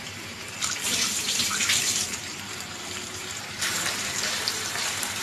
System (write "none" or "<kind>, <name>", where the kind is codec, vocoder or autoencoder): vocoder, BigVGAN v2